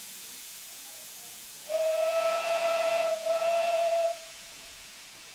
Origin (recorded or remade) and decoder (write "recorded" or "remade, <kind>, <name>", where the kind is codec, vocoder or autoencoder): remade, vocoder, Vocos